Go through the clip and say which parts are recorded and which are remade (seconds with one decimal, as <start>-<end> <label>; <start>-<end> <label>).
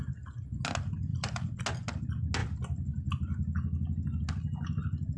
0.0-1.1 recorded; 1.1-1.6 remade; 1.6-2.4 recorded; 2.4-3.1 remade; 3.1-5.2 recorded